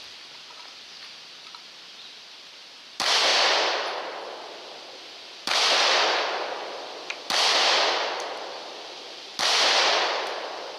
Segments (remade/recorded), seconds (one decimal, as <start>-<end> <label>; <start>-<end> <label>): 0.0-10.8 remade